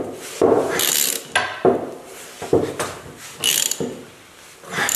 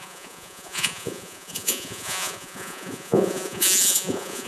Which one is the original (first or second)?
first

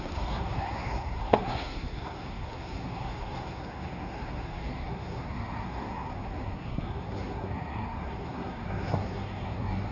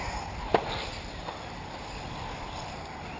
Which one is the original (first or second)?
second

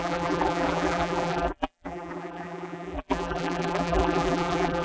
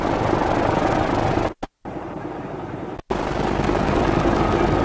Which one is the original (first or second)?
second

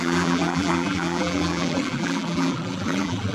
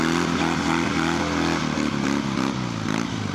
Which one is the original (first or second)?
second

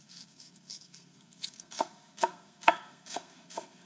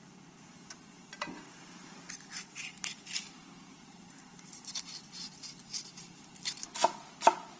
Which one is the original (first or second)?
second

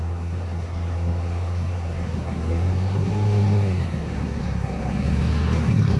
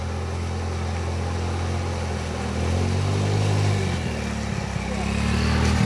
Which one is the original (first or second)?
second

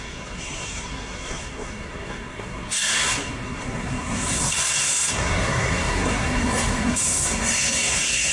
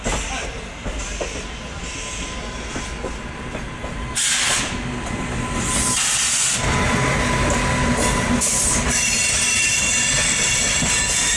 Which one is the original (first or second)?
second